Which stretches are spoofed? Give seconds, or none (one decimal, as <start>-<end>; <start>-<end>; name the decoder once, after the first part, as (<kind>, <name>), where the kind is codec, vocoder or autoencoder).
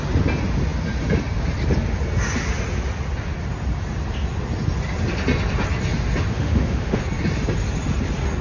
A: 6.3-7.0 (autoencoder, DAC-VAE)